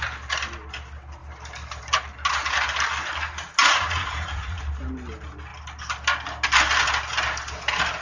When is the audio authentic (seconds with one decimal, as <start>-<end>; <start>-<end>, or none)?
0.0-3.6; 4.6-8.0